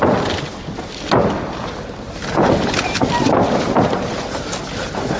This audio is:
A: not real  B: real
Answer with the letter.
B